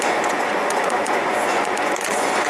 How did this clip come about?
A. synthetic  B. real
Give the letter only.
A